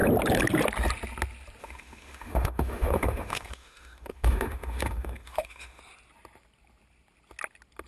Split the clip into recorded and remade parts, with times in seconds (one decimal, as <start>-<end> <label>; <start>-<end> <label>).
0.0-1.6 recorded; 1.6-5.8 remade; 5.8-7.9 recorded